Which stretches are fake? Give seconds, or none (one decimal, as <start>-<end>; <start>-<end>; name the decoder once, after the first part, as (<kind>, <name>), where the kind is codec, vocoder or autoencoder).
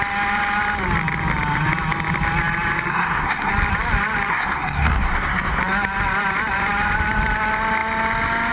2.9-3.5 (codec, SNAC); 4.3-5.6